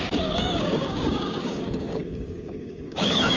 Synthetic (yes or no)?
yes